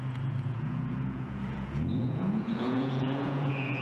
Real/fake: fake